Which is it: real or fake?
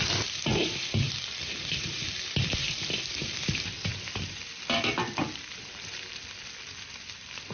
fake